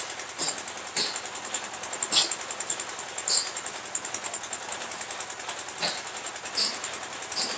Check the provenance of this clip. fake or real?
real